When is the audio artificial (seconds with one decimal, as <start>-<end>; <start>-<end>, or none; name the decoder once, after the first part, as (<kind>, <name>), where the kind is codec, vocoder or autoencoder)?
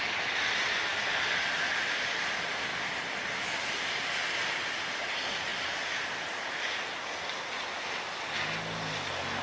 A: none